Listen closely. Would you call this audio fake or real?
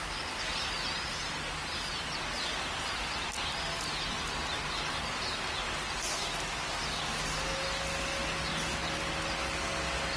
real